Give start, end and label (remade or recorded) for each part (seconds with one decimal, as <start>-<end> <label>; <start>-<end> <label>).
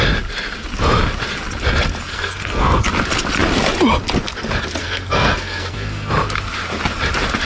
0.0-2.1 recorded; 2.1-2.9 remade; 2.9-4.8 recorded; 4.8-6.1 remade; 6.1-7.5 recorded